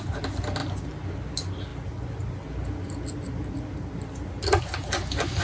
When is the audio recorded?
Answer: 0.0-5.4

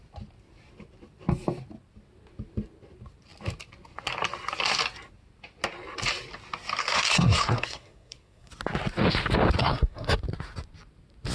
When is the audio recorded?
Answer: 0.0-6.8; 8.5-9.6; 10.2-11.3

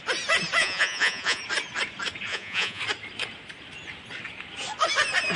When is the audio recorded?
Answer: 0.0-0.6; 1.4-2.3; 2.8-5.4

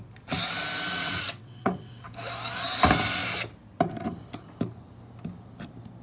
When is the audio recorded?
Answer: 0.0-1.0; 2.0-6.0

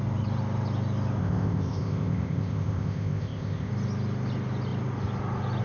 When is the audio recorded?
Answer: 0.0-1.2; 3.7-5.6

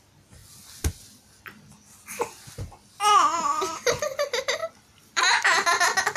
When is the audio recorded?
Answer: 0.0-4.6; 5.2-6.2